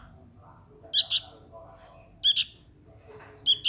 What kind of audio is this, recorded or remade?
recorded